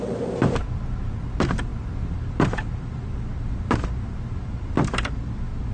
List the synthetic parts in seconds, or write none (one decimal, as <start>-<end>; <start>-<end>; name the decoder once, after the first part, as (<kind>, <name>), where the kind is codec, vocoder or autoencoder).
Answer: none